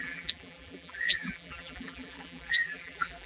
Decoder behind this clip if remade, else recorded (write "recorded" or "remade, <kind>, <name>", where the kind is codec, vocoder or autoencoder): remade, vocoder, BigVGAN v2